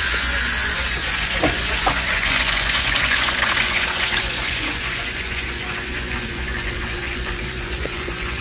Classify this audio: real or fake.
fake